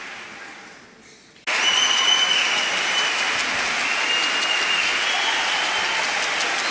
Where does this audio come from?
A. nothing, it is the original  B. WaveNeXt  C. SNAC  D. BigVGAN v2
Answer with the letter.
A